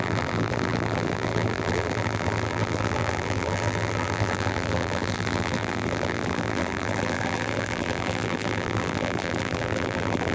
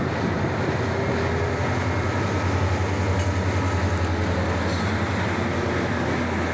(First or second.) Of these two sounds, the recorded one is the second